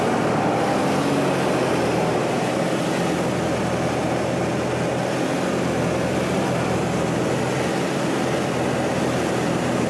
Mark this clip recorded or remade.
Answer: recorded